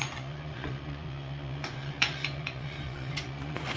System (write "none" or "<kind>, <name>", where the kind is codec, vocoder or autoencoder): vocoder, Vocos